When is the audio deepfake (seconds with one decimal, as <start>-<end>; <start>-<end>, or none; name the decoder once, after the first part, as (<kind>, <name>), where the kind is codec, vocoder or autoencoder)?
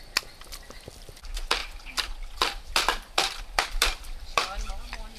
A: 1.6-4.7 (vocoder, BigVGAN v2)